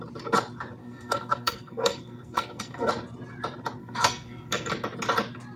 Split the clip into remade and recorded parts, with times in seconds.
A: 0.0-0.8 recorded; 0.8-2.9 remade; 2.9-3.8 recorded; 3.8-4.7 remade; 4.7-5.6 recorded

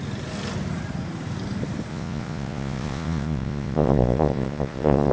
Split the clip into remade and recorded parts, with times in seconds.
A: 0.0-1.9 recorded; 1.9-5.1 remade